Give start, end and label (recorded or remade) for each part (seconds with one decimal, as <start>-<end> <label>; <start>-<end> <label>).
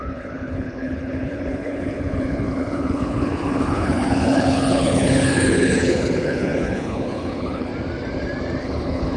0.0-7.7 remade; 7.7-8.6 recorded; 8.6-9.2 remade